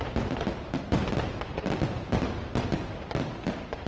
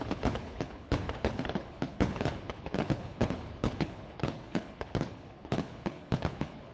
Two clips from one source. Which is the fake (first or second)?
second